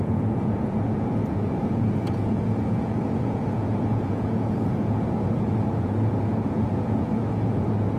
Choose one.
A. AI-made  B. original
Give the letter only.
A